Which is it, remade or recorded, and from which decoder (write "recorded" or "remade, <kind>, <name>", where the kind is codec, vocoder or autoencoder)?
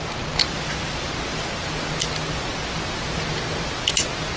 recorded